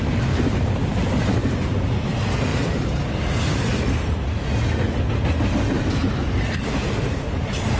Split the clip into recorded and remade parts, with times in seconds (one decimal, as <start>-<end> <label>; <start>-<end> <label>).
0.0-2.5 recorded; 2.5-3.4 remade; 3.4-6.0 recorded; 6.0-7.8 remade